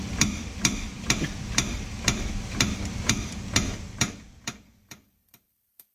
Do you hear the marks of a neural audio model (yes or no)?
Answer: yes